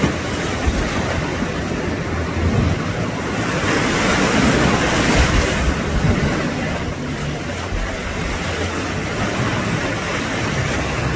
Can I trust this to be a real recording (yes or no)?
no